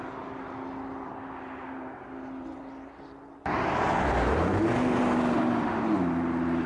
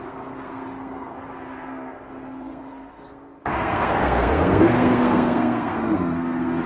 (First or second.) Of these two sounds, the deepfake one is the second